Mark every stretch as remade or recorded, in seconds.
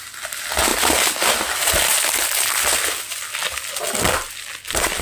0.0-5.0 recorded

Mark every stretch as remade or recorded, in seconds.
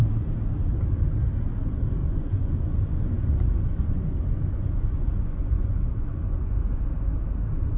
0.0-2.0 recorded; 2.0-6.7 remade; 6.7-7.8 recorded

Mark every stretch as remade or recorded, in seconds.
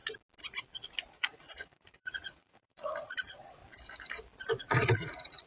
0.0-1.1 recorded; 1.1-3.6 remade; 3.6-4.6 recorded; 4.6-5.5 remade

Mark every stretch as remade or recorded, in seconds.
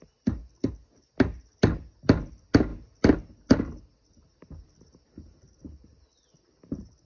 0.0-7.1 recorded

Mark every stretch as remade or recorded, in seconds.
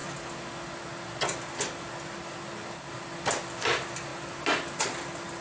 0.0-5.4 recorded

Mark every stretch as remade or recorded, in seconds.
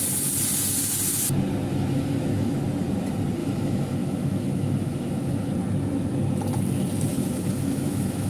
0.0-1.7 recorded; 1.7-2.6 remade; 2.6-3.4 recorded; 3.4-5.5 remade; 5.5-7.1 recorded; 7.1-8.3 remade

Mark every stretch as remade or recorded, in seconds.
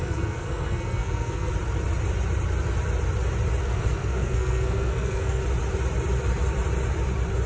0.0-1.5 remade; 1.5-3.6 recorded; 3.6-5.4 remade; 5.4-7.5 recorded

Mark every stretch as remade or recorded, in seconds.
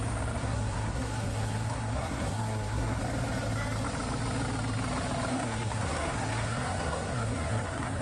0.0-0.4 recorded; 0.4-3.0 remade; 3.0-5.3 recorded; 5.3-8.0 remade